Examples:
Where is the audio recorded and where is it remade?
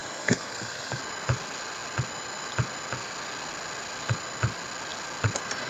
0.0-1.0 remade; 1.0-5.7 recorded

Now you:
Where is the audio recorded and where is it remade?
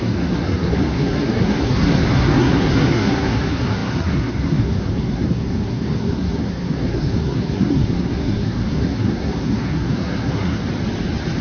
0.0-10.6 remade; 10.6-11.4 recorded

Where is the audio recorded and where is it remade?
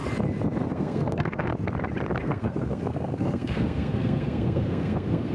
0.0-0.7 recorded; 0.7-1.5 remade; 1.5-2.2 recorded; 2.2-5.3 remade